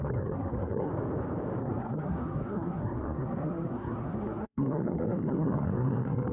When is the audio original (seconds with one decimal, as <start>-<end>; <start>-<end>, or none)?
0.9-1.6